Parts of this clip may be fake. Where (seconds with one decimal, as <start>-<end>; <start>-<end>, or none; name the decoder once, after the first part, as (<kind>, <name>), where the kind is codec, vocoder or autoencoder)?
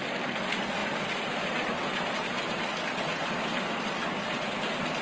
none